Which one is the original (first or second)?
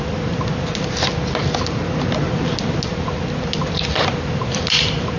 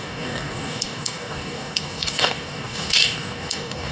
first